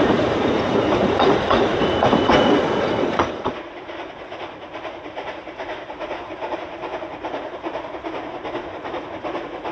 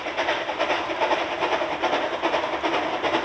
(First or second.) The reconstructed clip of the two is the first